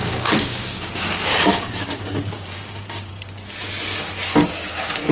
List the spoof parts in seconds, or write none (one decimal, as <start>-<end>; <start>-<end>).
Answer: 0.0-3.1